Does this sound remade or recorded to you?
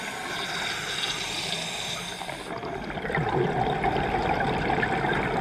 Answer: recorded